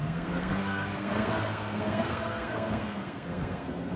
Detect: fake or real fake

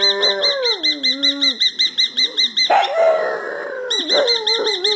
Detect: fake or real real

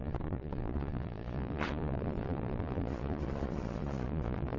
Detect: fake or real fake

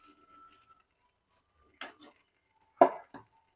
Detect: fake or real real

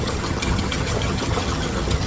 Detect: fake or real fake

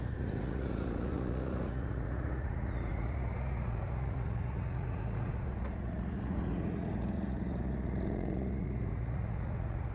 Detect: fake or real fake